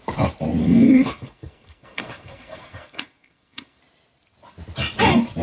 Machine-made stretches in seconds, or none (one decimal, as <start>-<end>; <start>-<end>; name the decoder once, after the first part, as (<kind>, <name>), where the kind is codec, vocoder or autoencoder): 0.6-3.8 (codec, SNAC)